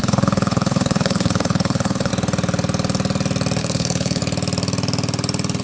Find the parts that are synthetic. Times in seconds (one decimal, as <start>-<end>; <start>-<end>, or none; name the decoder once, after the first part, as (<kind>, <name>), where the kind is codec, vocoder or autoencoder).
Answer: 0.0-2.1 (codec, HILCodec); 3.6-4.2